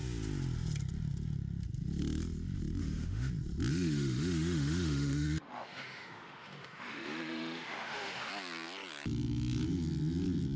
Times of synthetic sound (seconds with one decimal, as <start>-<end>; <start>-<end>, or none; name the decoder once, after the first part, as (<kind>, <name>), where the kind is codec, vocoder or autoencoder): 2.8-3.3 (autoencoder, DAC-VAE); 3.7-8.3